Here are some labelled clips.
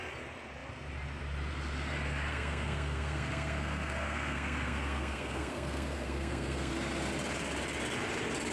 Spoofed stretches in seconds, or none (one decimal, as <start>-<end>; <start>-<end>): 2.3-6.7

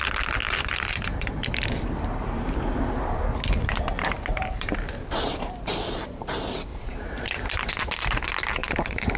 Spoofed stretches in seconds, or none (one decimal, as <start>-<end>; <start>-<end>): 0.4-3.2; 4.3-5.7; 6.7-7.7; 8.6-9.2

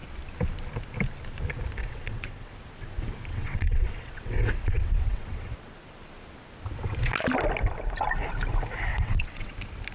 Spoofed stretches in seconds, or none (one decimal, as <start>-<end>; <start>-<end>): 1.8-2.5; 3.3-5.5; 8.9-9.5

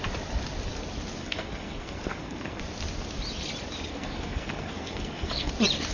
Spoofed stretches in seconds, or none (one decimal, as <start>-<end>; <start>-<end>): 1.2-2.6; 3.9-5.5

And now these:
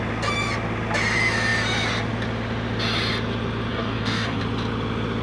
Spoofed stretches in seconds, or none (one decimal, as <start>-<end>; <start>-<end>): 3.7-4.4

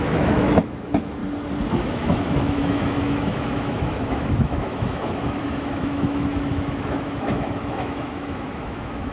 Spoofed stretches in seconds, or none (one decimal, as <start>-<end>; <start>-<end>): 0.0-1.2; 1.7-9.1

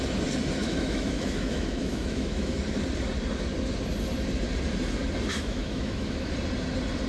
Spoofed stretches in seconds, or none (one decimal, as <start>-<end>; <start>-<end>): 0.6-2.6; 5.3-6.3